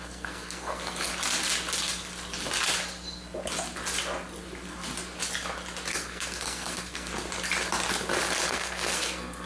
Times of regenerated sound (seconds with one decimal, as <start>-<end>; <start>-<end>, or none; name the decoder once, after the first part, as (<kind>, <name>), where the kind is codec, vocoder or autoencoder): 0.0-1.1 (codec, SNAC); 5.9-7.1; 8.5-9.5